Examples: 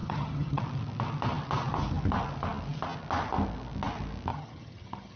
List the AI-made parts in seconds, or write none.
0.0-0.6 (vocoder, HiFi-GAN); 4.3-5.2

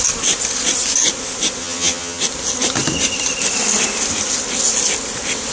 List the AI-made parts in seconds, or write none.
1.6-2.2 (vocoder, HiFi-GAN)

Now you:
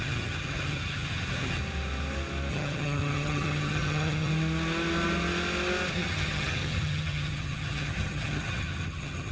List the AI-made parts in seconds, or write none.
0.0-1.6 (vocoder, HiFi-GAN); 2.5-4.3; 5.9-9.3

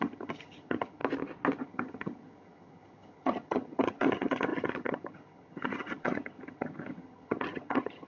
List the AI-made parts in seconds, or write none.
0.0-1.0 (vocoder, HiFi-GAN); 1.6-8.1